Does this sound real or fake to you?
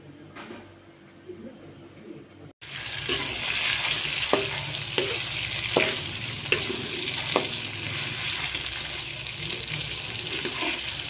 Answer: real